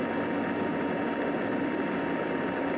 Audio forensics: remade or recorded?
recorded